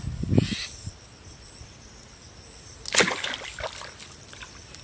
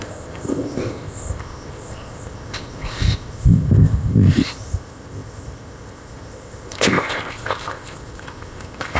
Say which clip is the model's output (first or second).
second